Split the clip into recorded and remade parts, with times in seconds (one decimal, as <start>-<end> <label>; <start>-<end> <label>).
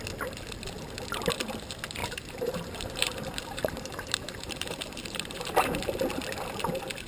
0.0-2.0 recorded; 2.0-5.8 remade; 5.8-7.1 recorded